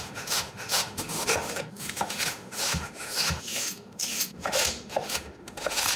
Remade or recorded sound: remade